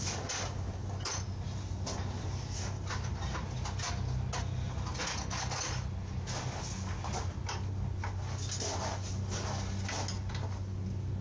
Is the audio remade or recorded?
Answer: recorded